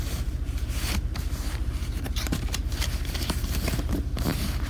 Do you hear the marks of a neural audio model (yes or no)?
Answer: yes